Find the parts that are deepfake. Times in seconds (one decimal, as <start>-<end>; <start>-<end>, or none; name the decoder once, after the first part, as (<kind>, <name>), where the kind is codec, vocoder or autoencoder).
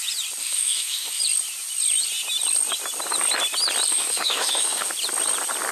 0.4-1.2 (autoencoder, DAC-VAE); 3.9-4.9